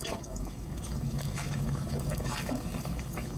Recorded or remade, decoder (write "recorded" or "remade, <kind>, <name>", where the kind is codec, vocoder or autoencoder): remade, codec, DAC